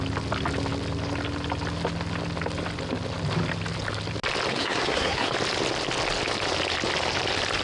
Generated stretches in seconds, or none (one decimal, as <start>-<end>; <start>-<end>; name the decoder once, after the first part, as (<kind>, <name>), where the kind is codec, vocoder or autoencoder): 4.5-5.3 (codec, SNAC)